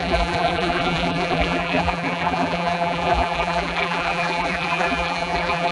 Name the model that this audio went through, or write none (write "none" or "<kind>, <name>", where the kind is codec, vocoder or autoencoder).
vocoder, BigVGAN v2